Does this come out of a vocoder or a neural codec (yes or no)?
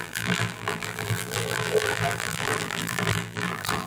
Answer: yes